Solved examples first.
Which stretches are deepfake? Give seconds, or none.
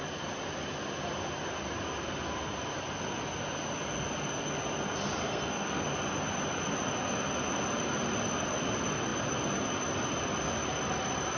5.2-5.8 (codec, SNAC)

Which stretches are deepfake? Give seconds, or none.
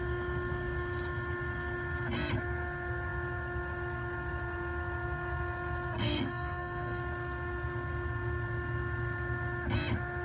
6.0-7.0 (codec, SNAC)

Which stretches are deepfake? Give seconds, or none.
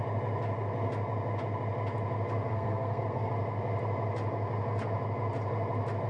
2.5-3.3 (codec, SNAC)